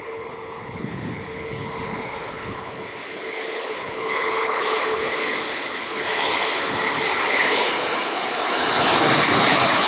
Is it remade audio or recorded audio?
remade